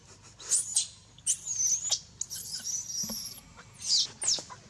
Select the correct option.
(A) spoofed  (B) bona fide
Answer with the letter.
B